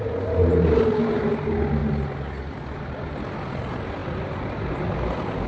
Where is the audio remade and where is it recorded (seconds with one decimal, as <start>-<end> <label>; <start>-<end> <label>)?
0.0-5.5 recorded